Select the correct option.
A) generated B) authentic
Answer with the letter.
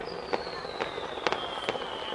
B